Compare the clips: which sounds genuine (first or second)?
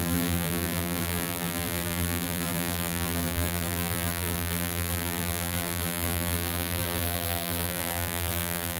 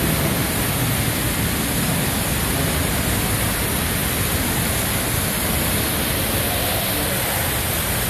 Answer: second